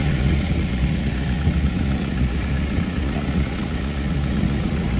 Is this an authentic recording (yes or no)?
no